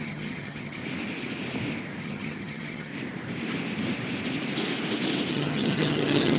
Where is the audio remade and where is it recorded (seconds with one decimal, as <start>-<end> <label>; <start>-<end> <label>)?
0.0-0.8 remade; 0.8-2.0 recorded; 2.0-2.9 remade; 2.9-5.3 recorded; 5.3-6.4 remade

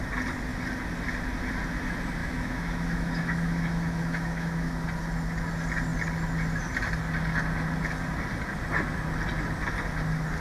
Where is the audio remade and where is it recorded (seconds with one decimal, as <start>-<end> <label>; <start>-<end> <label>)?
0.0-2.2 recorded; 2.2-4.8 remade; 4.8-10.4 recorded

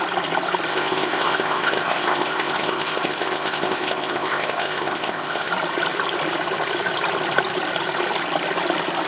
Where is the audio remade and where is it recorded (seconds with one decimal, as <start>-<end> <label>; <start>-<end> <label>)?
0.0-0.7 recorded; 0.7-5.5 remade; 5.5-9.1 recorded